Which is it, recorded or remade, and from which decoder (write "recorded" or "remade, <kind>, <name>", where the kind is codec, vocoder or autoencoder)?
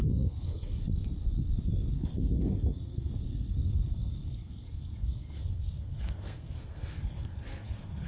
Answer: remade, codec, SNAC